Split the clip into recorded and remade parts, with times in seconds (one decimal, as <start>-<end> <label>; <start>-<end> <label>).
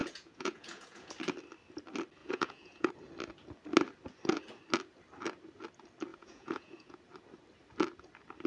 0.0-1.1 remade; 1.1-2.2 recorded; 2.2-2.9 remade; 2.9-6.1 recorded; 6.1-7.0 remade; 7.0-8.5 recorded